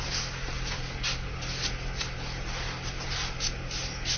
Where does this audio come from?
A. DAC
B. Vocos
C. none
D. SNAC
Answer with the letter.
C